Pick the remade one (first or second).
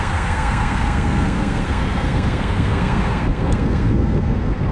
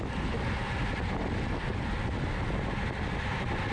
first